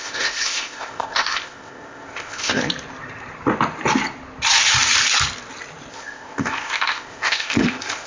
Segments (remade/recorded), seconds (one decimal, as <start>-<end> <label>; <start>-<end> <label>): 0.0-2.6 remade; 2.6-5.9 recorded; 5.9-8.1 remade